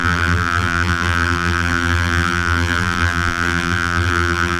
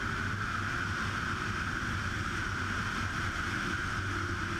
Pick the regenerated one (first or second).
first